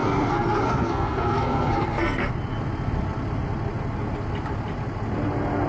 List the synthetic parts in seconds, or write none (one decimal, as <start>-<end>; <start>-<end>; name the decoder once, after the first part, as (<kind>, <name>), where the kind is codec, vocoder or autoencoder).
0.0-2.3 (codec, SNAC)